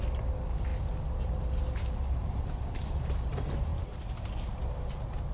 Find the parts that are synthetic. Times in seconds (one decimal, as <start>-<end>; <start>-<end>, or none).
none